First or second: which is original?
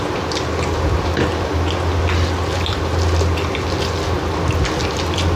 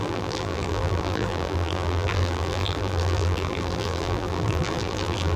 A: first